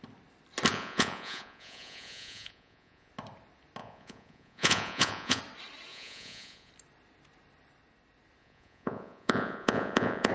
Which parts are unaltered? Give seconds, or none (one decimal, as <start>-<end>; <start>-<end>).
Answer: 0.0-0.7; 3.1-3.8; 5.4-5.9; 6.7-8.4